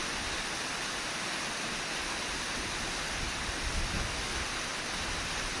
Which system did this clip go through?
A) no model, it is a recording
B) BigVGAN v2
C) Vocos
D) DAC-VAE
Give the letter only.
A